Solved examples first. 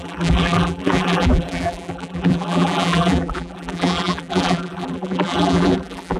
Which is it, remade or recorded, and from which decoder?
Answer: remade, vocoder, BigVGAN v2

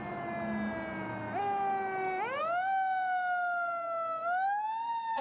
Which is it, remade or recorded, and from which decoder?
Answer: recorded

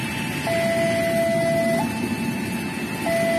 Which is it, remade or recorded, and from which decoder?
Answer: recorded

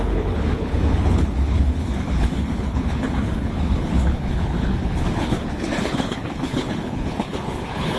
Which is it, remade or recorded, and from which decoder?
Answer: remade, codec, HILCodec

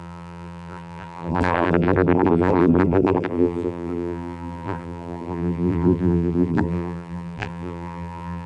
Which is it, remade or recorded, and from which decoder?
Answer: remade, vocoder, BigVGAN v2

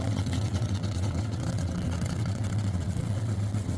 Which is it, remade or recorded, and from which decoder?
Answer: remade, vocoder, WaveNeXt